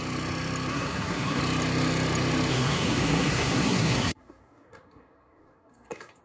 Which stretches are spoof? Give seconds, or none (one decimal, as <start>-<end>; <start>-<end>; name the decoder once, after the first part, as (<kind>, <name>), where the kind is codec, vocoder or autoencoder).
0.7-1.4 (codec, SNAC); 2.5-6.2